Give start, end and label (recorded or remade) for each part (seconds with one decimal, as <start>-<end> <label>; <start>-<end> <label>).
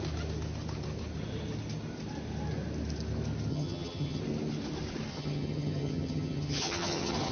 0.0-3.5 recorded; 3.5-4.2 remade; 4.2-5.1 recorded; 5.1-7.3 remade